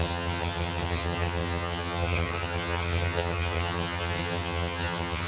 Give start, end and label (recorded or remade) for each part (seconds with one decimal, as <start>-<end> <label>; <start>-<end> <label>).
0.0-5.3 remade